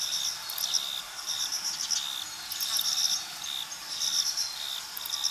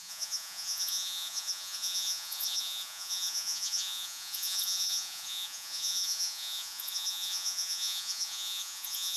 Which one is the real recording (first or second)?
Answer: first